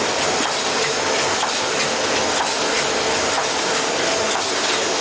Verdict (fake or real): real